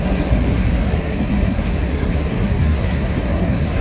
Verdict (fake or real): fake